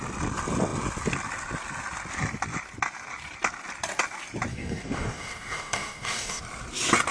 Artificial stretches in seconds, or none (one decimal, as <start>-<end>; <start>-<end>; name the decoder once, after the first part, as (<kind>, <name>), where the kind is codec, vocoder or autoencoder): 4.5-6.4 (codec, DAC)